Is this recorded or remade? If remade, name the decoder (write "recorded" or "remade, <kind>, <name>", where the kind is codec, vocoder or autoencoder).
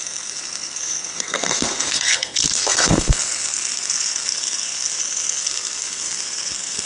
remade, codec, SNAC